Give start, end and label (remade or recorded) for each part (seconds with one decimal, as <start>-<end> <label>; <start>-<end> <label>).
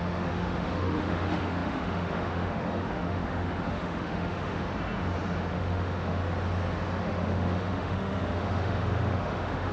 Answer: 0.0-4.7 remade; 4.7-5.5 recorded; 5.5-6.2 remade; 6.2-7.0 recorded; 7.0-9.7 remade